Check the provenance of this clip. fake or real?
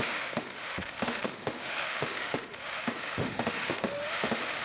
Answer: fake